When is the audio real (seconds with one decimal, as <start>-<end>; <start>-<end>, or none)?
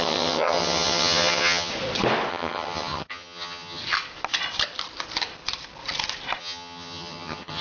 1.7-2.3; 3.8-6.4